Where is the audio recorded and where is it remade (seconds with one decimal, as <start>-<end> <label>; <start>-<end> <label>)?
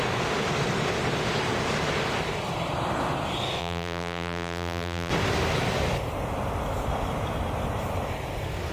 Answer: 0.0-3.6 recorded; 3.6-5.1 remade; 5.1-8.7 recorded